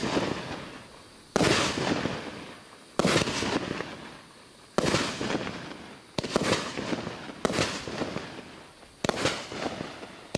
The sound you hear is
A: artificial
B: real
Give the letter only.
B